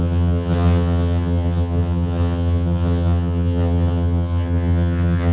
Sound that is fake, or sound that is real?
fake